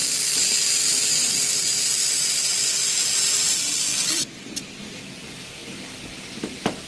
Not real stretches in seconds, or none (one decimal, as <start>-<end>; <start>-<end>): none